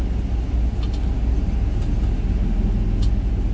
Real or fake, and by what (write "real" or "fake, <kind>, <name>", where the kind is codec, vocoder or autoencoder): real